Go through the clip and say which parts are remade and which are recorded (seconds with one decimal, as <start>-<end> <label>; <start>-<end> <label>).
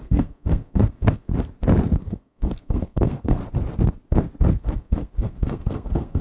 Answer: 0.0-1.3 remade; 1.3-2.0 recorded; 2.0-3.4 remade; 3.4-4.6 recorded; 4.6-6.2 remade